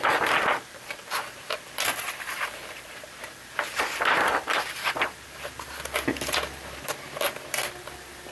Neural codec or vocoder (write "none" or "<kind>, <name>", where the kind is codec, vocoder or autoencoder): vocoder, BigVGAN v2